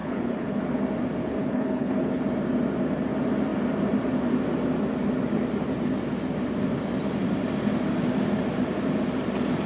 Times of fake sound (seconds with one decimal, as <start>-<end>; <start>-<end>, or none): 0.0-0.6; 1.2-2.2

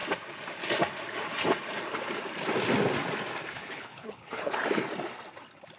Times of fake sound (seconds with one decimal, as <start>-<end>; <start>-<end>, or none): 3.5-4.6

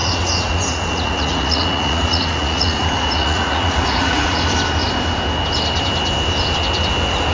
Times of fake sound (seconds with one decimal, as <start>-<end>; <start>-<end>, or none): 0.0-4.4

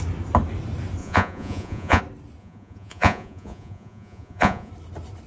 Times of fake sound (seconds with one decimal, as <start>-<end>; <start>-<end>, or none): 1.0-2.0; 2.4-4.7

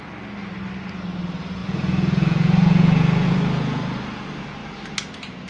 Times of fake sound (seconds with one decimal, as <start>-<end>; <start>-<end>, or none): 1.6-3.8

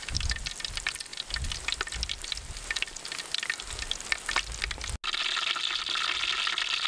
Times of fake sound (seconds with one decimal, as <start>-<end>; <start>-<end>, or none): none

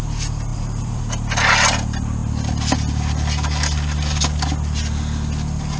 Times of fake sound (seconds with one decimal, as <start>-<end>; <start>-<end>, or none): 0.5-1.0

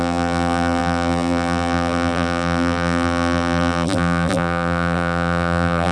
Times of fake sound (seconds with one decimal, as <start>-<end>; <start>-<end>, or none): 0.0-5.9